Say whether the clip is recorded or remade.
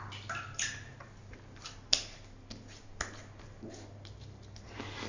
recorded